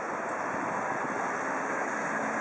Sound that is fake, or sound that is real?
real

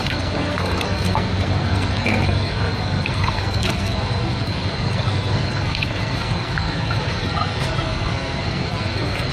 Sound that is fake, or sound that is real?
fake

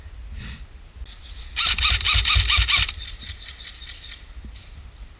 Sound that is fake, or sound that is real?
real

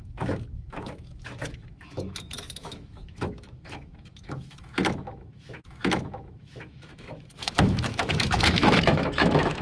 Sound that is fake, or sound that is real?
fake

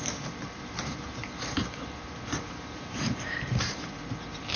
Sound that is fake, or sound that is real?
fake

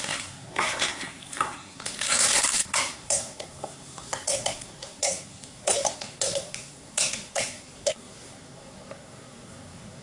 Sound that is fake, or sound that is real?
fake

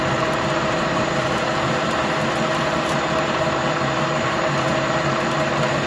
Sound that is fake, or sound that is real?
fake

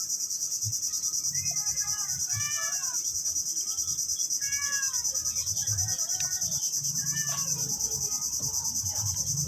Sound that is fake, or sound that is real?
real